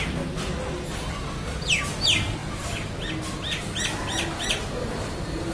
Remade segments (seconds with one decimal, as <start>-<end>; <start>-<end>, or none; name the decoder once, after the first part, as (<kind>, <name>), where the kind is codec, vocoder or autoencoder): none